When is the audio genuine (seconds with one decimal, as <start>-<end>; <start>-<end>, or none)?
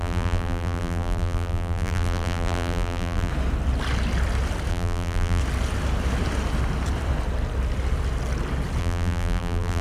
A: 3.3-4.7; 5.4-8.8